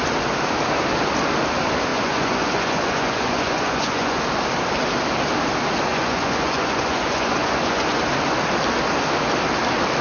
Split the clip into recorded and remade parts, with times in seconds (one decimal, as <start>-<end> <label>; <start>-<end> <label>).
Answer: 0.0-1.9 recorded; 1.9-4.2 remade; 4.2-5.9 recorded; 5.9-8.0 remade; 8.0-10.0 recorded